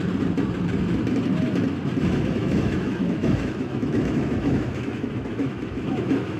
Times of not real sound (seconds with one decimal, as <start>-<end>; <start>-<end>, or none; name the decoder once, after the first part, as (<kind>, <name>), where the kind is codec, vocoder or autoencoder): 2.4-6.4 (autoencoder, DAC-VAE)